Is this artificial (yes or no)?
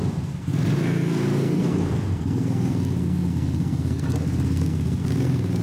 yes